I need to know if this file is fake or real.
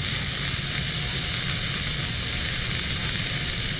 real